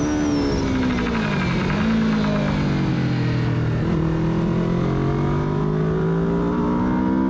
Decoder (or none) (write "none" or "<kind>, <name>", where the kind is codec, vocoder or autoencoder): none